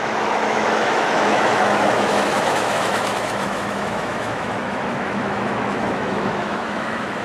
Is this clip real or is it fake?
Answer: fake